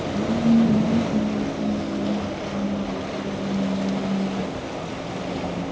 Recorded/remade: recorded